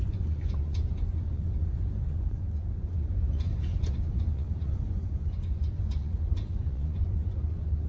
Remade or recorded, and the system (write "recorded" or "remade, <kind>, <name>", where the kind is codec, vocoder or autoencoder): remade, vocoder, Vocos